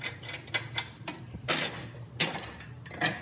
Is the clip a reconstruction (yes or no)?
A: no